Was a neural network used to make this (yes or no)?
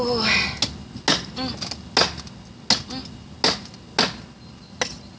no